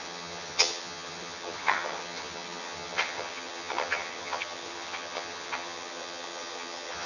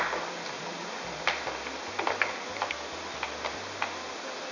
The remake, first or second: first